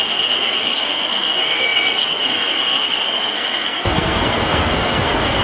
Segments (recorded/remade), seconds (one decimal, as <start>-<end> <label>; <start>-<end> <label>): 0.0-5.4 remade

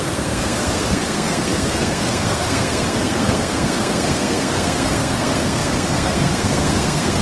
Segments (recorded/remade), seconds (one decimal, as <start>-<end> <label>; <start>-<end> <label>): 0.0-7.2 remade

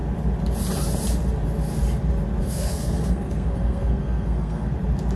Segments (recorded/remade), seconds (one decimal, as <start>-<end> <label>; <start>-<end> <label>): 0.0-2.4 recorded; 2.4-4.7 remade; 4.7-5.2 recorded

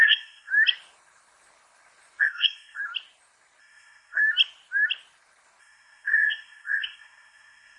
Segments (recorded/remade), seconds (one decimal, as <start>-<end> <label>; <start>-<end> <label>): 0.0-0.5 remade; 0.5-2.2 recorded; 2.2-2.8 remade; 2.8-3.6 recorded; 3.6-4.2 remade; 4.2-5.6 recorded; 5.6-7.8 remade

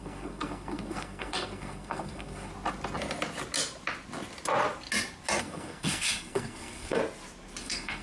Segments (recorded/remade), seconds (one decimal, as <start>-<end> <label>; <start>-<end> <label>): 0.0-2.5 remade; 2.5-5.4 recorded; 5.4-7.0 remade; 7.0-7.6 recorded; 7.6-8.0 remade

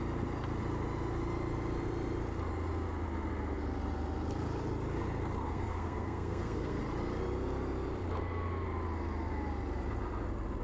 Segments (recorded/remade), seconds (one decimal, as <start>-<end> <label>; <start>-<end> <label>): 0.0-5.4 recorded; 5.4-6.8 remade; 6.8-10.6 recorded